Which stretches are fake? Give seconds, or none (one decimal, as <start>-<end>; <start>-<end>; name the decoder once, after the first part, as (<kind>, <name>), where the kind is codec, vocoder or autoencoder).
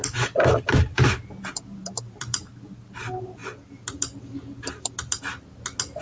1.8-2.4 (vocoder, BigVGAN v2); 3.4-5.2